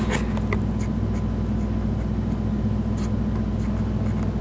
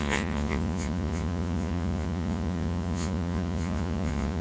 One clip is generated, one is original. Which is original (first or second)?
first